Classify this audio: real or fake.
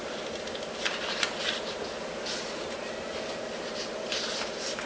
real